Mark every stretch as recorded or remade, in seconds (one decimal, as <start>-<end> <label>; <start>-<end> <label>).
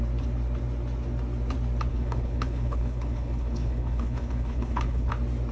0.0-1.9 recorded; 1.9-5.1 remade; 5.1-5.5 recorded